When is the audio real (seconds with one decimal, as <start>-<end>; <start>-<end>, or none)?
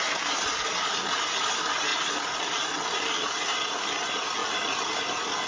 0.0-5.5